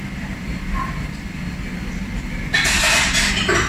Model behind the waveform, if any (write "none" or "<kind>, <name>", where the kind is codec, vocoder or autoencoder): none